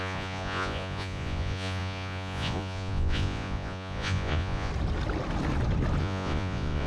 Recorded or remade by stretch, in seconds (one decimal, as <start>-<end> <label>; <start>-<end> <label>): 0.0-4.7 remade; 4.7-6.0 recorded; 6.0-6.9 remade